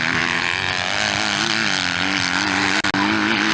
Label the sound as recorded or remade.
recorded